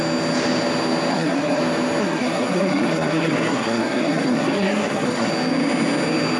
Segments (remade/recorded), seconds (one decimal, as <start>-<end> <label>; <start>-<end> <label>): 0.0-1.1 recorded; 1.1-1.6 remade; 1.6-2.0 recorded; 2.0-5.3 remade; 5.3-6.4 recorded